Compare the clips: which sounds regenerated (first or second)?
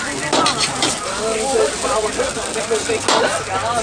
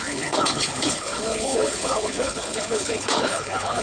second